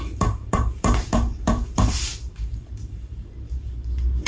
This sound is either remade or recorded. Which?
remade